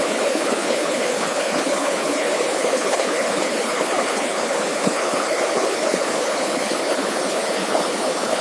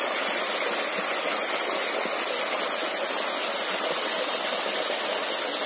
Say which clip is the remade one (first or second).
first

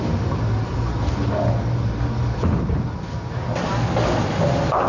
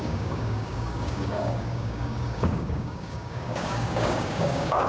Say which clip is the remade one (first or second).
second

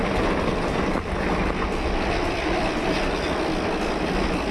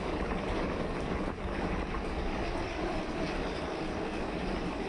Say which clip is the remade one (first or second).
second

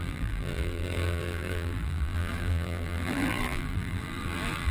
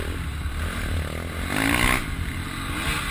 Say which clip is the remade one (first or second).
first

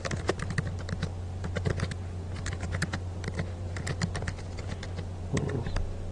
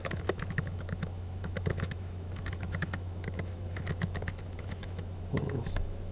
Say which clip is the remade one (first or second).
second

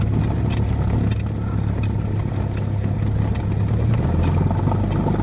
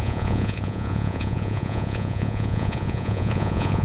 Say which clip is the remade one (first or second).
second